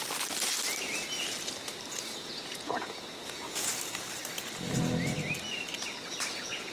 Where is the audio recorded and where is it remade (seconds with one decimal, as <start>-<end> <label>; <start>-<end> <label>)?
0.0-1.9 recorded; 1.9-3.7 remade; 3.7-6.3 recorded; 6.3-6.7 remade